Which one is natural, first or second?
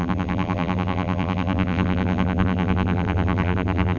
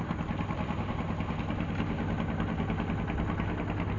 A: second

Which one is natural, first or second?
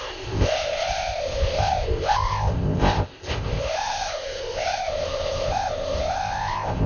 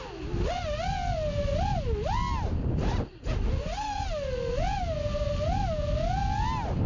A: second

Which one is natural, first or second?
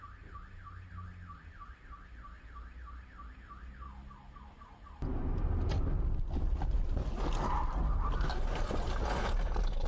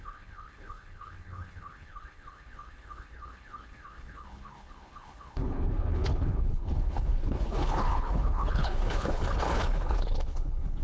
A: first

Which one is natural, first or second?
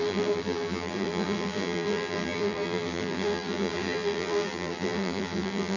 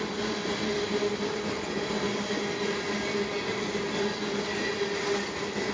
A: second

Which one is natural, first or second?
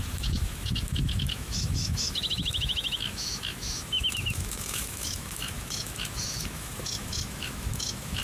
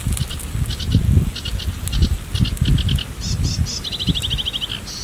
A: second